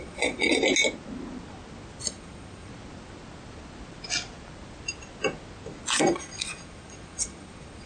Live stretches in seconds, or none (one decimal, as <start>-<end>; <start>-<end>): 0.6-2.0; 2.7-6.0